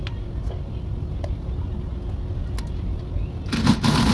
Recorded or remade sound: recorded